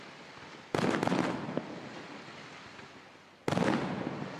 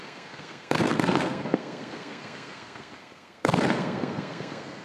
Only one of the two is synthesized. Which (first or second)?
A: second